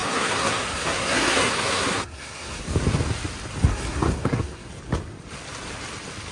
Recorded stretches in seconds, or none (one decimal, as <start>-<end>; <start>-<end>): 2.6-3.7; 4.7-6.3